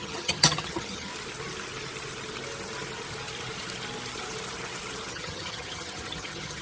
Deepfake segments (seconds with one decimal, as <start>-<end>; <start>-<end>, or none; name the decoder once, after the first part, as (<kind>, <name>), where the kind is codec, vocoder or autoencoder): 0.0-1.1 (vocoder, HiFi-GAN); 5.1-6.6